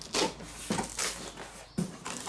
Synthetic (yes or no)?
no